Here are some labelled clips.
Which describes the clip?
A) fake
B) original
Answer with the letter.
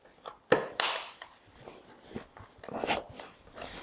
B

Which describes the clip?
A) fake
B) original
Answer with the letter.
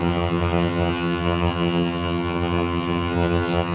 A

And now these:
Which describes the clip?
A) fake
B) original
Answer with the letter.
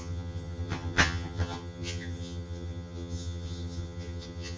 A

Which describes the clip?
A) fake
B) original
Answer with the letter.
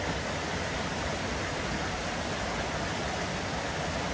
B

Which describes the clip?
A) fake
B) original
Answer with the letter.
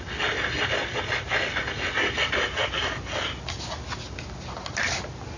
B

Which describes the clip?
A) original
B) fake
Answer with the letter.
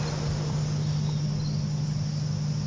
A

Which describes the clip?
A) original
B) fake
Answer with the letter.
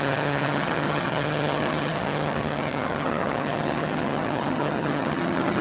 B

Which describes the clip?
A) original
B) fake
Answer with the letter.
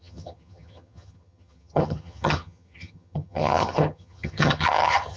B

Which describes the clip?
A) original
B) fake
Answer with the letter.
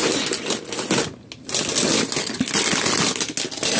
A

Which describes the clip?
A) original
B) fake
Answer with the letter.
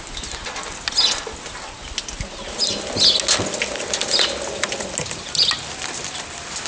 A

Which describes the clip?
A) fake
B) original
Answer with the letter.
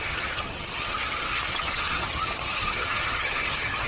A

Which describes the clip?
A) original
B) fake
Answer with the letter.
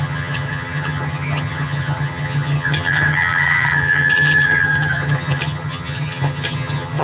B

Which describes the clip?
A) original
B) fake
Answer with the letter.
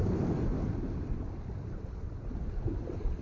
A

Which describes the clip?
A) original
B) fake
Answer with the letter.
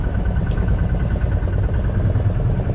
A